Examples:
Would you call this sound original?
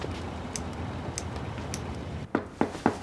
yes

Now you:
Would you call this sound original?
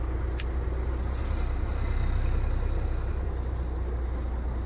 yes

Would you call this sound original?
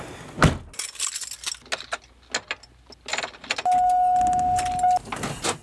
yes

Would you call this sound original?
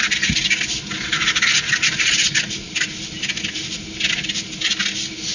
yes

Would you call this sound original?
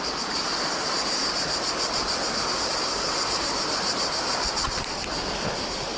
yes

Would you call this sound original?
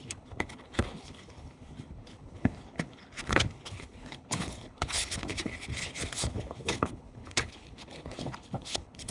no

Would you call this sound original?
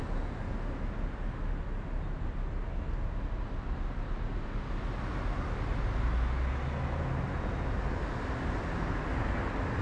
yes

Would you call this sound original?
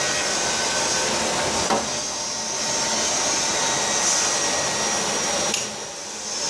yes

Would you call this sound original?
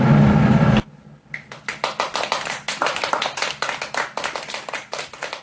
yes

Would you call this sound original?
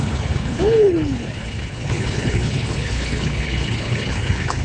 no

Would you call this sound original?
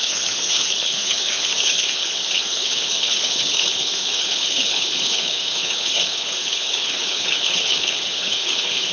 no